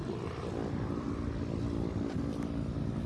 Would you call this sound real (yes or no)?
yes